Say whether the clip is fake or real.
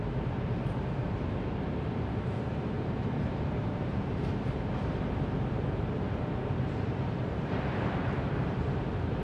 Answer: fake